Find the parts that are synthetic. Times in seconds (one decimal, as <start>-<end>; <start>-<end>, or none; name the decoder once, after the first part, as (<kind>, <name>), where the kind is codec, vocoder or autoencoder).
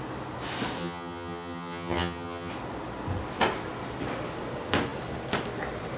0.8-2.5 (vocoder, HiFi-GAN)